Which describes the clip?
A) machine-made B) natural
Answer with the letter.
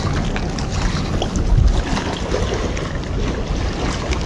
B